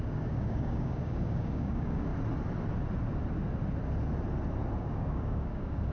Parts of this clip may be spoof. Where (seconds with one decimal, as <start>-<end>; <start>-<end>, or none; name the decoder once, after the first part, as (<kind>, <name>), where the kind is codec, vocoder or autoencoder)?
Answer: 0.0-2.1 (codec, DAC); 4.8-5.9